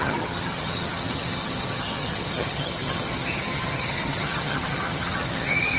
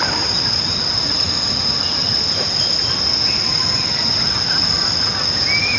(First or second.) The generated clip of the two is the first